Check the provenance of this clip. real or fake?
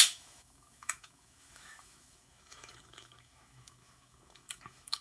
fake